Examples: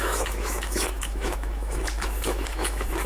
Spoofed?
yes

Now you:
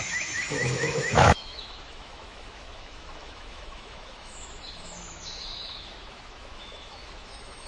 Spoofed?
yes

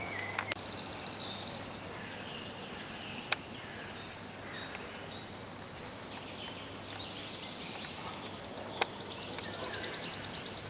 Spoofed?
no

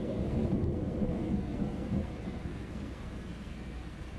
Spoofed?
yes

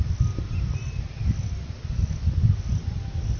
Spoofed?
no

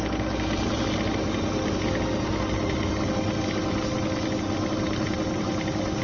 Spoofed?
no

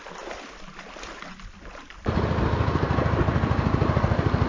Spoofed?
no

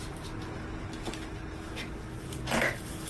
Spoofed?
no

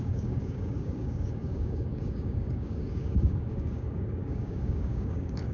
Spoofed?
yes